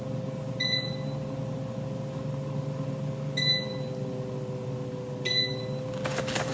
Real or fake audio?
real